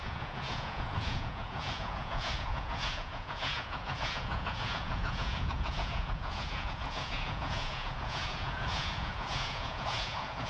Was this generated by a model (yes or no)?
yes